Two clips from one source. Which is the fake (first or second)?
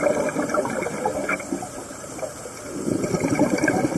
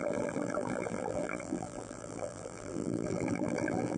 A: second